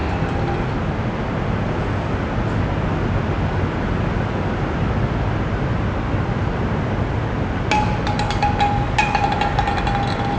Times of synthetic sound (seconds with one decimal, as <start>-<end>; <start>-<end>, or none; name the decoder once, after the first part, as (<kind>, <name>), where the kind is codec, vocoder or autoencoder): none